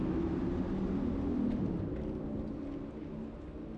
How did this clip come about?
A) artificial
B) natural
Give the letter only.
B